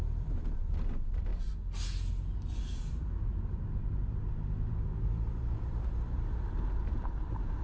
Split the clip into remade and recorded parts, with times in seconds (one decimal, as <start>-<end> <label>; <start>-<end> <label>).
0.0-1.3 remade; 1.3-2.9 recorded; 2.9-7.6 remade